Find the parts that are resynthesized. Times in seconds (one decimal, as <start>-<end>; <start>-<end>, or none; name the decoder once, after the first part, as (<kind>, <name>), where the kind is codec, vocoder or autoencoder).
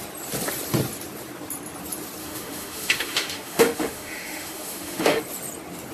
2.2-5.2 (autoencoder, DAC-VAE)